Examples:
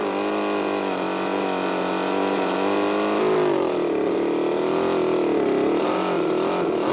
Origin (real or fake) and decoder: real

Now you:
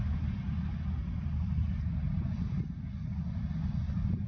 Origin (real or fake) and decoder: real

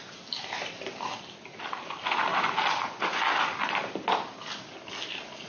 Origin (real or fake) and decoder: real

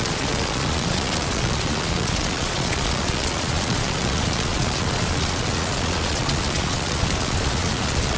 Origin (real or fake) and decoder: fake, vocoder, Vocos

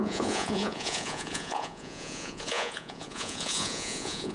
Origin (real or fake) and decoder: fake, vocoder, Vocos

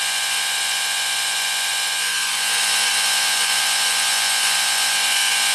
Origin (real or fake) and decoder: fake, vocoder, Vocos